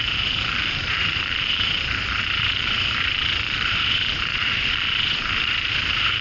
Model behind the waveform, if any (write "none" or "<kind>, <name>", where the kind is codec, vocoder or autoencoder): vocoder, BigVGAN v2